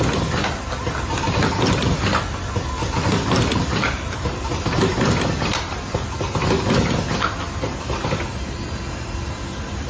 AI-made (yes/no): no